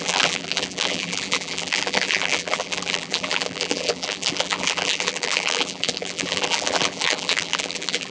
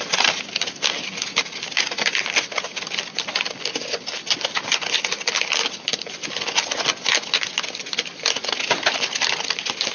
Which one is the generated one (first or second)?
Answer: first